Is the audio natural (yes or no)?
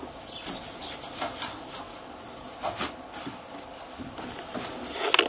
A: yes